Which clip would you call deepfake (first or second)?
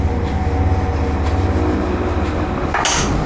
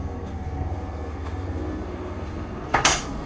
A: second